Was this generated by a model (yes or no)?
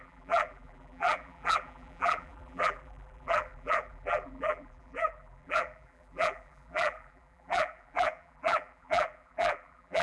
yes